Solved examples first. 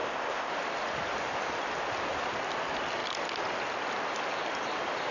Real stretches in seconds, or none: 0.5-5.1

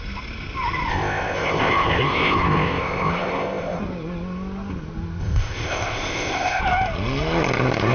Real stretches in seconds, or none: 0.0-0.9; 3.8-5.2; 6.6-7.9

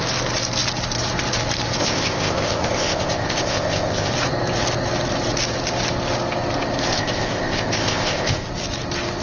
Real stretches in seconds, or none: 0.0-1.8; 4.1-6.9; 8.5-9.2

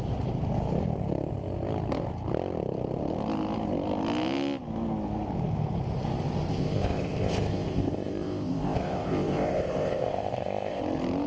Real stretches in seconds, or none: 0.0-6.5; 10.8-11.3

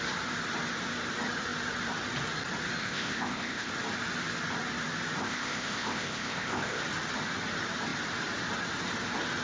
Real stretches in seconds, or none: 0.0-2.8; 3.7-5.2; 6.8-9.4

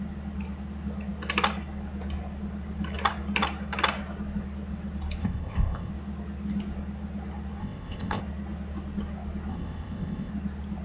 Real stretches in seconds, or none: 0.0-5.2; 5.9-7.6; 8.2-9.5; 10.3-10.8